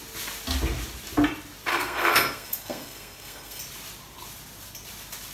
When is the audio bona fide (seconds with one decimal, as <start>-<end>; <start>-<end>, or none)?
0.0-1.7; 3.6-5.3